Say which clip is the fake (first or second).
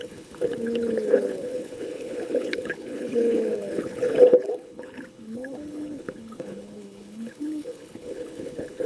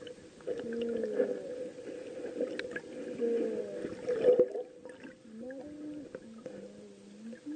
first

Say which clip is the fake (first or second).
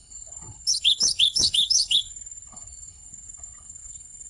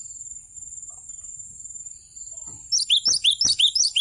first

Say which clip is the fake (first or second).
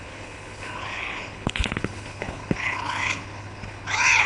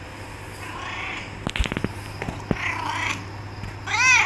first